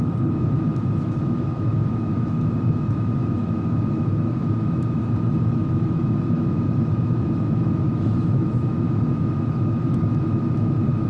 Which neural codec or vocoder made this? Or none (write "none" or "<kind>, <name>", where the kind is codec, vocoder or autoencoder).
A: autoencoder, DAC-VAE